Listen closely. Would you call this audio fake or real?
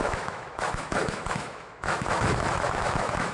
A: fake